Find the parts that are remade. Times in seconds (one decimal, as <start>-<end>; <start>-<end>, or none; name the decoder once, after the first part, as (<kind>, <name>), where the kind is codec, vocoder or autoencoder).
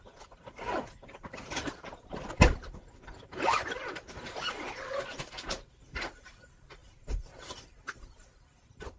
none